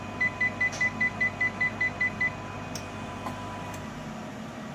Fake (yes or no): no